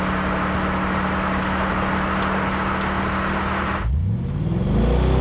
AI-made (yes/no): no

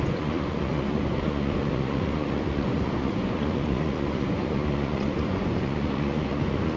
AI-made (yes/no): yes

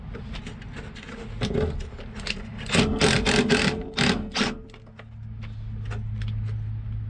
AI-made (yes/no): no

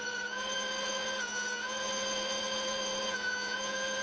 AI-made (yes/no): yes